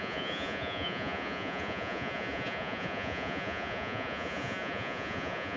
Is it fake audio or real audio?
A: fake